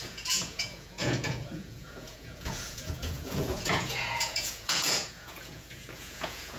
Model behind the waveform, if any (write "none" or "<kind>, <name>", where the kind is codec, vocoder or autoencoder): vocoder, Vocos